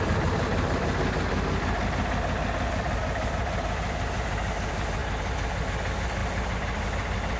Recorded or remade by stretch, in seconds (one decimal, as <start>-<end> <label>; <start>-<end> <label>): 0.0-6.2 recorded; 6.2-7.4 remade